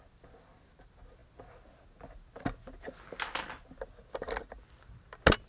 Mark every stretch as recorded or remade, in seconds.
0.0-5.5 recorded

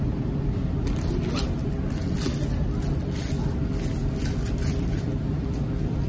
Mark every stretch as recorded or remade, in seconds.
0.0-6.1 recorded

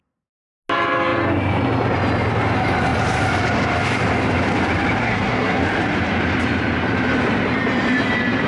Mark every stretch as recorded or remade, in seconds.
0.0-5.0 recorded; 5.0-5.6 remade; 5.6-8.5 recorded

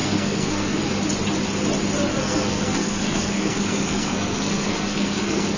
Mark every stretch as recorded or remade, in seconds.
0.0-0.9 remade; 0.9-2.1 recorded; 2.1-5.6 remade

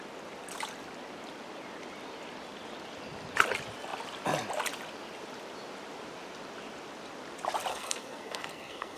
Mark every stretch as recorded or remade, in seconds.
0.0-7.7 recorded; 7.7-9.0 remade

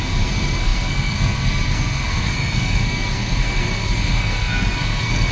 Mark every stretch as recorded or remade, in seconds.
0.0-5.3 remade